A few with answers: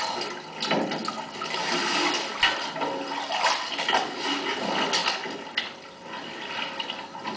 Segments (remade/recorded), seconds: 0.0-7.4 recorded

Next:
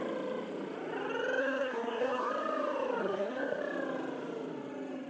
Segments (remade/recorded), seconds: 0.0-1.4 recorded; 1.4-2.3 remade; 2.3-3.0 recorded; 3.0-3.6 remade; 3.6-5.1 recorded

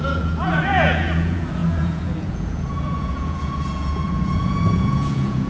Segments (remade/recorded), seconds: 0.0-5.5 remade

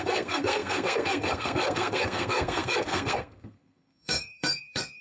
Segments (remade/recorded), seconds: 0.0-5.0 remade

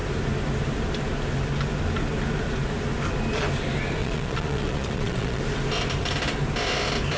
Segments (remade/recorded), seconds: 0.0-4.0 recorded; 4.0-5.4 remade; 5.4-7.2 recorded

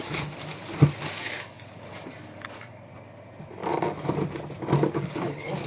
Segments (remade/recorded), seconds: 0.0-0.5 remade; 0.5-1.0 recorded; 1.0-2.9 remade; 2.9-4.9 recorded; 4.9-5.7 remade

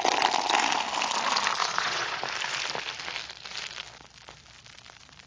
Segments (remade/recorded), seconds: 0.0-1.6 recorded; 1.6-2.2 remade; 2.2-5.3 recorded

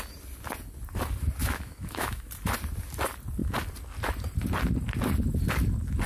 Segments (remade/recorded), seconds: 0.0-1.4 recorded; 1.4-2.3 remade; 2.3-6.1 recorded